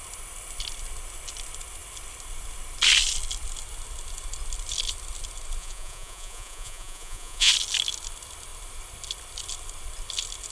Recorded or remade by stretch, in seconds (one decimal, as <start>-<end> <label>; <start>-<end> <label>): 0.0-5.6 recorded; 5.6-7.5 remade; 7.5-10.5 recorded